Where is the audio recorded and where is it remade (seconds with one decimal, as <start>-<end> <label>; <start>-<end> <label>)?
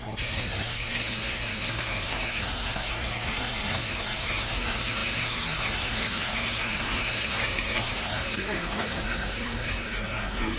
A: 0.0-10.6 remade